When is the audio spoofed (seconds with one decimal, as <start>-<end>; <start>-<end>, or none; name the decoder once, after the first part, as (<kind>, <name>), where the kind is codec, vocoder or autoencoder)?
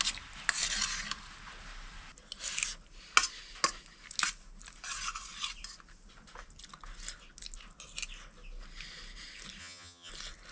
9.6-10.1 (vocoder, HiFi-GAN)